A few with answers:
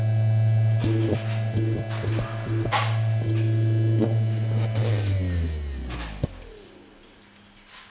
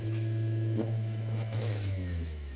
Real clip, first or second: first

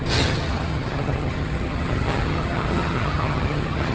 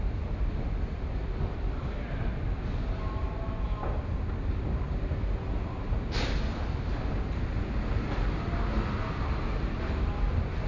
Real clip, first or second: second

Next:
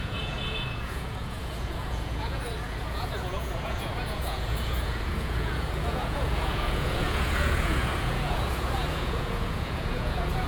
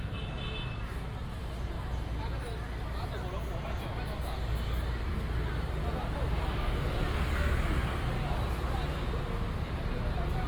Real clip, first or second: second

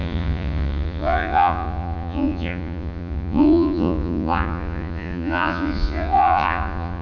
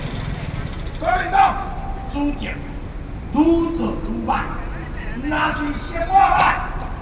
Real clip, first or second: second